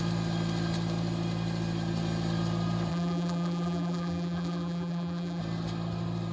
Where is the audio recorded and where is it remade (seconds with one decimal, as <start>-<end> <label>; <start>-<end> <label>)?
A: 0.0-2.9 recorded; 2.9-5.4 remade; 5.4-6.3 recorded